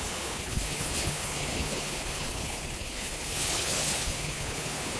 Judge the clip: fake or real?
fake